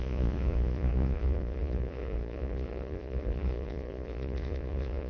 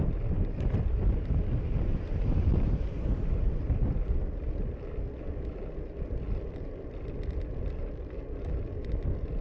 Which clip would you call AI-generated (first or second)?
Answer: first